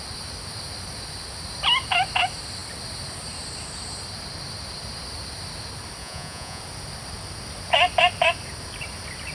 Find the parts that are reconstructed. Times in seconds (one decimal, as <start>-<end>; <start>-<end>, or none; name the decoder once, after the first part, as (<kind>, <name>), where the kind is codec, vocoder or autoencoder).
6.0-6.6 (vocoder, Vocos)